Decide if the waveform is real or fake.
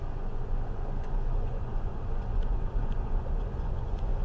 fake